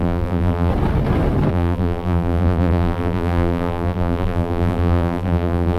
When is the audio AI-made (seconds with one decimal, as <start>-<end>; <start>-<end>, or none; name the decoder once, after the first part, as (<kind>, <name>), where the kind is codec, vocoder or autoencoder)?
0.0-0.7 (vocoder, BigVGAN v2); 1.5-5.8